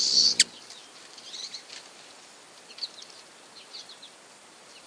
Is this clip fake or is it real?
real